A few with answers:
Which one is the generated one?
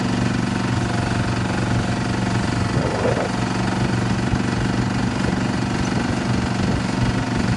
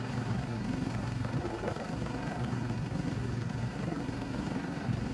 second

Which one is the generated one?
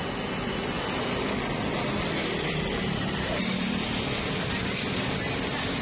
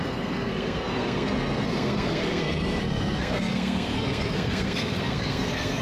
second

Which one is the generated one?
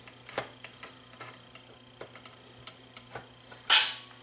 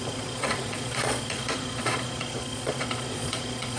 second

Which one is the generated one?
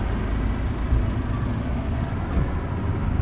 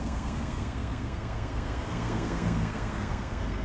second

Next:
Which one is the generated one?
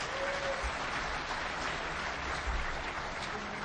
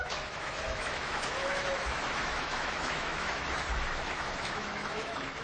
second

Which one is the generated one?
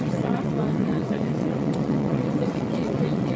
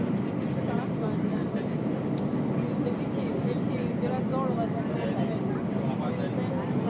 first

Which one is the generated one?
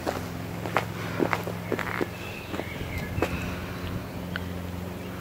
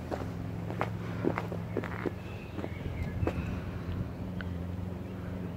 second